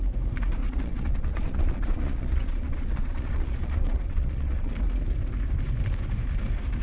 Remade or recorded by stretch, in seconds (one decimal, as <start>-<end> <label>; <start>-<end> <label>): 0.0-0.6 recorded; 0.6-4.7 remade; 4.7-6.8 recorded